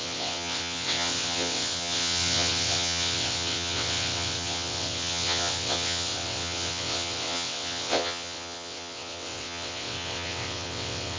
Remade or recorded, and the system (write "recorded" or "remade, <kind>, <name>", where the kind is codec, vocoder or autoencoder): remade, vocoder, WaveNeXt